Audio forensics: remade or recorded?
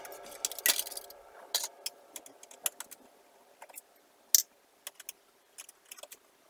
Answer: recorded